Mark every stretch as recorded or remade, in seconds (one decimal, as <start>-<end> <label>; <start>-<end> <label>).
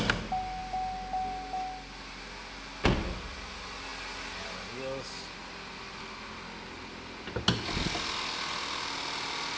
0.0-9.6 recorded